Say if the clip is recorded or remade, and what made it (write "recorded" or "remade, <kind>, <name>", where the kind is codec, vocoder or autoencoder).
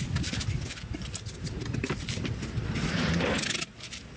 recorded